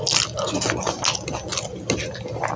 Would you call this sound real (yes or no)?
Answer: yes